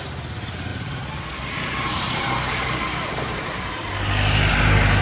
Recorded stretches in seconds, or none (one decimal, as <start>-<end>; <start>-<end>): 0.0-0.7; 3.7-5.0